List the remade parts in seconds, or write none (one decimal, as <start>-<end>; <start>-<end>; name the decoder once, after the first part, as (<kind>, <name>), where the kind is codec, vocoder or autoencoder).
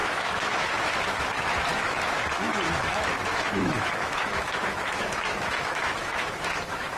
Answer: 0.0-7.0 (autoencoder, DAC-VAE)